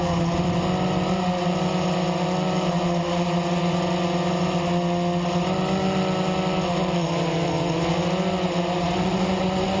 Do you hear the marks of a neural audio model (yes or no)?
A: no